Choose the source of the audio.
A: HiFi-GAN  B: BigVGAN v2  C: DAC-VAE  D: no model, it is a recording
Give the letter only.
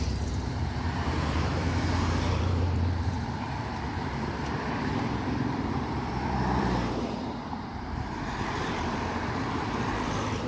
B